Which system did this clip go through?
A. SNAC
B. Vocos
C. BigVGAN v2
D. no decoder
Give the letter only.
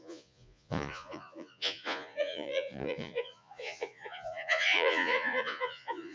B